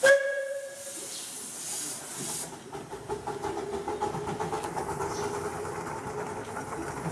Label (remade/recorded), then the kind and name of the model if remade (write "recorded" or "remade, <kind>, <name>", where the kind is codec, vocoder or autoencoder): recorded